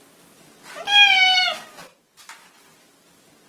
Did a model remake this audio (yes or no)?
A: no